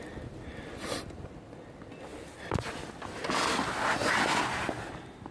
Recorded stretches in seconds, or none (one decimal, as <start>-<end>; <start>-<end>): 0.0-2.1; 2.8-4.5